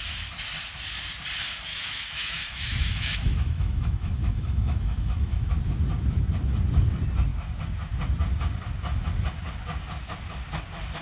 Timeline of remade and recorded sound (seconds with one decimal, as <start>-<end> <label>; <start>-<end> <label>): 0.0-1.7 recorded; 1.7-5.5 remade; 5.5-11.0 recorded